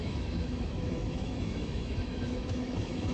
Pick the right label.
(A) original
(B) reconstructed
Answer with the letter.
B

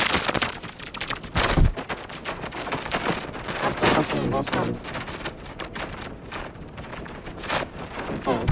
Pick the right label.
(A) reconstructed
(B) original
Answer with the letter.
B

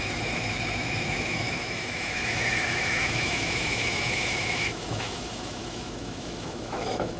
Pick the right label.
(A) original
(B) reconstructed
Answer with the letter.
B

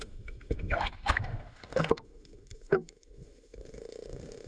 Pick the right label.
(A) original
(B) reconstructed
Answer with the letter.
B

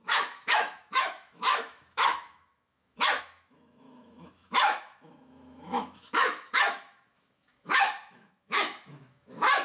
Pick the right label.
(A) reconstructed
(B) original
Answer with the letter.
A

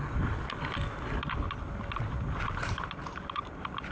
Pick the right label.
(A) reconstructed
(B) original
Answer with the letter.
B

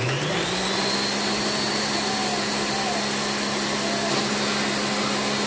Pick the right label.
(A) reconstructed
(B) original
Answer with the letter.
B